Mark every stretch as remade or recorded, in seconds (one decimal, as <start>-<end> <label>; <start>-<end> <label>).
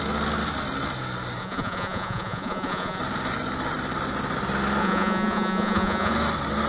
0.0-1.4 recorded; 1.4-3.0 remade; 3.0-4.8 recorded; 4.8-6.1 remade; 6.1-6.7 recorded